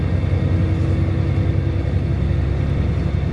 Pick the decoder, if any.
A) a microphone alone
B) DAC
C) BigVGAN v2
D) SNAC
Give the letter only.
A